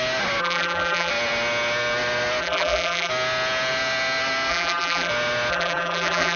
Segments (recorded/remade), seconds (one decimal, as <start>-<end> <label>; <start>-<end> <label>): 0.0-0.4 recorded; 0.4-1.1 remade; 1.1-2.4 recorded; 2.4-3.1 remade; 3.1-4.5 recorded; 4.5-5.1 remade; 5.1-5.5 recorded; 5.5-6.4 remade